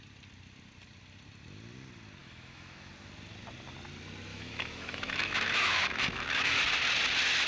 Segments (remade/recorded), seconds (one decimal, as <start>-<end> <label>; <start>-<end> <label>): 0.0-2.2 recorded; 2.2-2.9 remade; 2.9-4.3 recorded; 4.3-6.6 remade; 6.6-7.5 recorded

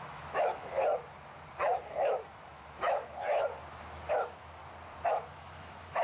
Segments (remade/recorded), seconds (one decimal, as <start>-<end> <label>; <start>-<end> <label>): 0.0-0.8 remade; 0.8-1.6 recorded; 1.6-3.5 remade; 3.5-4.1 recorded; 4.1-4.6 remade; 4.6-5.1 recorded; 5.1-6.0 remade

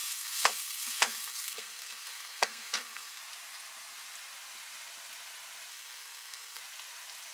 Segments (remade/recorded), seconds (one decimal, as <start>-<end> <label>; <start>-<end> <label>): 0.0-3.2 remade; 3.2-5.7 recorded; 5.7-6.6 remade; 6.6-7.3 recorded

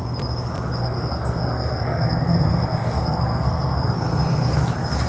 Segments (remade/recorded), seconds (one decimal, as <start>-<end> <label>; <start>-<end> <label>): 0.0-0.8 recorded; 0.8-3.9 remade; 3.9-5.1 recorded